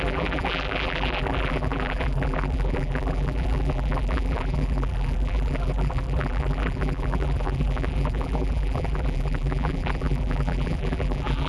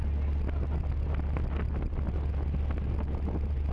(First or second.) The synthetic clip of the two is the first